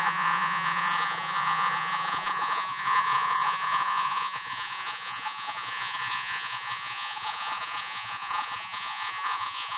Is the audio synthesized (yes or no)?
yes